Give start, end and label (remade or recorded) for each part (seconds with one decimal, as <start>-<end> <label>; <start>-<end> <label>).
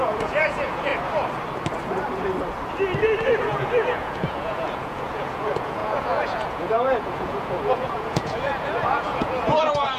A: 0.0-0.9 remade; 0.9-3.4 recorded; 3.4-10.0 remade